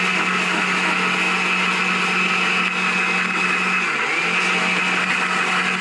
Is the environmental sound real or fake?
real